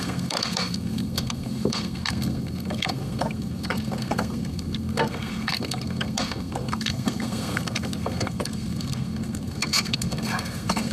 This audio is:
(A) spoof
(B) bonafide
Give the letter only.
A